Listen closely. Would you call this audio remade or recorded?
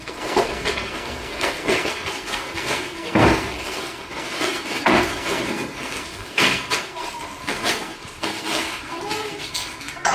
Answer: remade